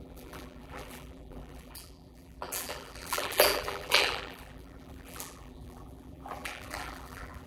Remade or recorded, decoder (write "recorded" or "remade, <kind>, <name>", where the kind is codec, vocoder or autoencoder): remade, vocoder, BigVGAN v2